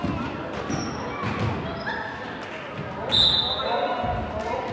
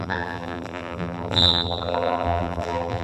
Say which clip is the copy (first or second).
second